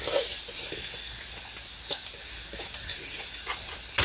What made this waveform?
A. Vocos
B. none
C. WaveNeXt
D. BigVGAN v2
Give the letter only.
B